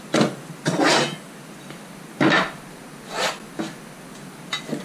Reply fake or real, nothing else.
real